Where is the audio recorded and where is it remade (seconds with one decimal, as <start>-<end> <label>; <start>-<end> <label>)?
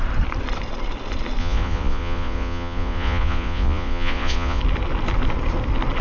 0.0-1.4 recorded; 1.4-4.6 remade; 4.6-6.0 recorded